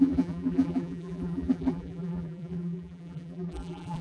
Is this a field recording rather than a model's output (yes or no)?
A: no